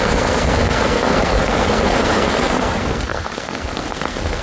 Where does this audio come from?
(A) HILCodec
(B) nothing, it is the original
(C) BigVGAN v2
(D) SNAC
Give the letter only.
D